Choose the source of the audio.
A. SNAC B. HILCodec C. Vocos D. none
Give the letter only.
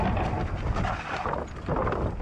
D